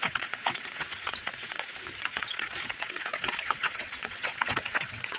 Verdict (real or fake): fake